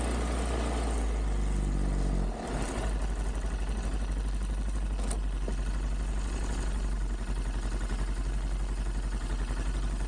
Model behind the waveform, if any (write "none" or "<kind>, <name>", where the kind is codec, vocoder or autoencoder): none